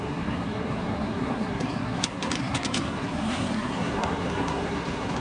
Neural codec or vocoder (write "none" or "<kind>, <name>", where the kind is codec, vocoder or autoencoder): codec, SNAC